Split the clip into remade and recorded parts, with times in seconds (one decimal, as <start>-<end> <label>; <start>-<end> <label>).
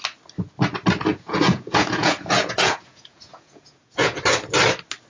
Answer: 0.0-1.1 recorded; 1.1-4.2 remade; 4.2-5.1 recorded